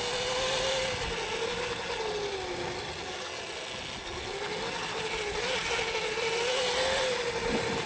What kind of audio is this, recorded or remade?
recorded